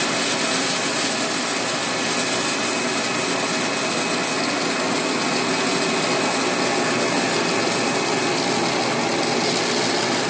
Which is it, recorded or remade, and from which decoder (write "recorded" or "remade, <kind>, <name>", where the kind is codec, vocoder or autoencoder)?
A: recorded